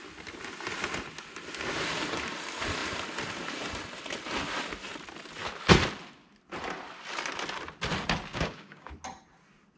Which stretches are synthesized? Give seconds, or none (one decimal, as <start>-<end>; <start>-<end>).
8.3-8.9